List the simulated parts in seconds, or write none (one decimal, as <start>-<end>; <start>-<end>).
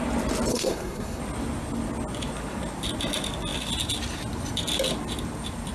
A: 0.5-1.2